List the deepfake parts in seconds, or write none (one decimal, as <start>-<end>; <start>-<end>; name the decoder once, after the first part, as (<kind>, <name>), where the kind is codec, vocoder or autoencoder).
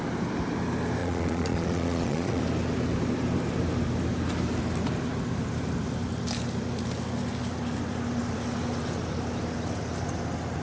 1.0-2.4 (vocoder, Vocos)